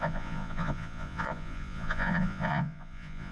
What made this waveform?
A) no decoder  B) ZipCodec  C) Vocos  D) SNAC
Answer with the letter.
C